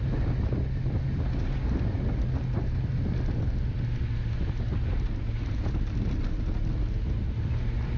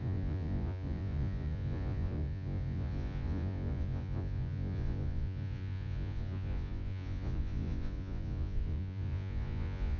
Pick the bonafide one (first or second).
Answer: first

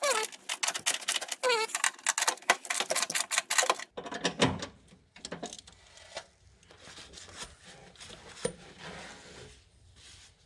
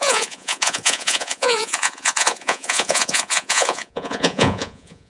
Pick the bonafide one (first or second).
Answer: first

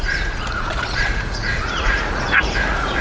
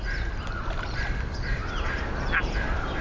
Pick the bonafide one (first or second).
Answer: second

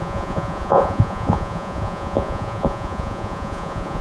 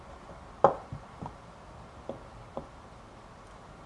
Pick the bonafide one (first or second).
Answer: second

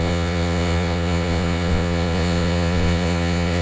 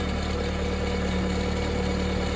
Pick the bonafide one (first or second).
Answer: second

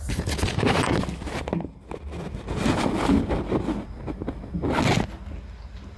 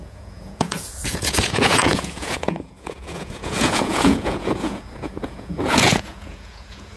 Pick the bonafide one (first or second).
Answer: first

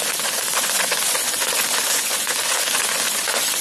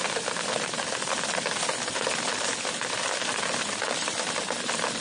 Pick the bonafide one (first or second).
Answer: second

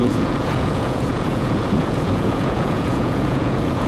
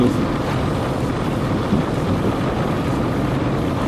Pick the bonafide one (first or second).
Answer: second